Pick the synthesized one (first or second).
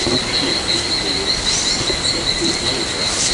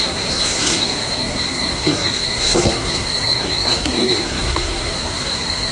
second